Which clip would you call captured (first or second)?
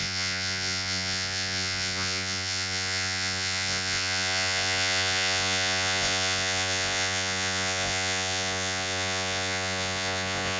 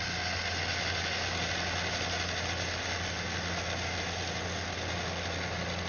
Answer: second